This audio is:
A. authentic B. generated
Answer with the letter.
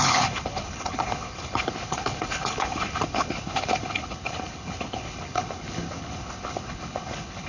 B